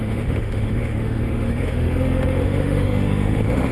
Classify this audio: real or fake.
fake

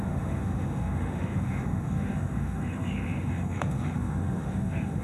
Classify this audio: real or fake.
fake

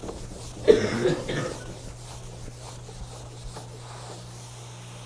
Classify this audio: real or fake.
real